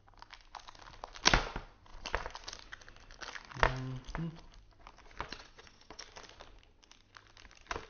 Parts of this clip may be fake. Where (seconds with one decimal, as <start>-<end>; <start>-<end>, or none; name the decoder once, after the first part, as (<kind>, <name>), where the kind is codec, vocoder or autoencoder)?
5.3-6.0 (vocoder, WaveNeXt)